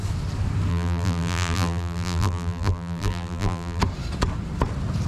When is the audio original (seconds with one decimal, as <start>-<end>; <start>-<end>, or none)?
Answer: 0.0-0.7; 3.8-5.1